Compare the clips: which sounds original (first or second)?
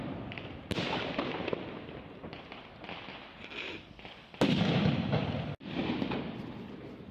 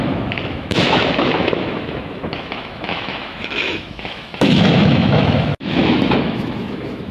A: first